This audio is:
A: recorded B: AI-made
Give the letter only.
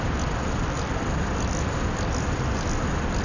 A